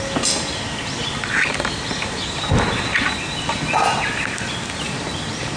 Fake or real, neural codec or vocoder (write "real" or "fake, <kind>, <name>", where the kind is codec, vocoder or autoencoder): real